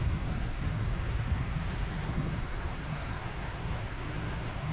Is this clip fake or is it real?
fake